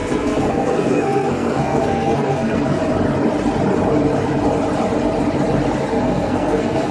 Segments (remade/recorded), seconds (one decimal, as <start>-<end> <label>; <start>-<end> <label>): 0.0-2.8 remade; 2.8-6.0 recorded; 6.0-6.9 remade